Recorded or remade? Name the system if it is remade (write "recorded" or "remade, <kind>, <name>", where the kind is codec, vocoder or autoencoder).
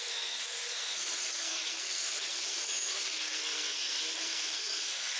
remade, codec, SNAC